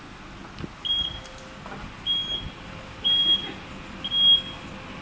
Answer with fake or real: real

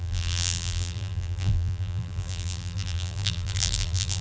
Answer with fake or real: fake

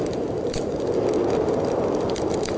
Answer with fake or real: fake